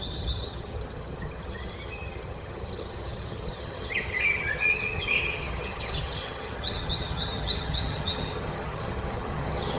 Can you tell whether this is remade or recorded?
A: remade